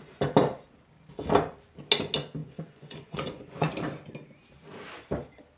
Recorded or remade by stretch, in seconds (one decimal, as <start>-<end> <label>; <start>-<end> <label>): 0.0-2.4 recorded; 2.4-3.7 remade; 3.7-5.6 recorded